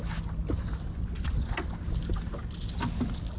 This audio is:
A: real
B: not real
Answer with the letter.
A